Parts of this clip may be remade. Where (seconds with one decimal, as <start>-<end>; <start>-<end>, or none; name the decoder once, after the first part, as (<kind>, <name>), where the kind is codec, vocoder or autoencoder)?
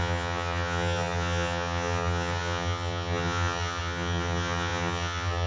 0.0-5.5 (vocoder, HiFi-GAN)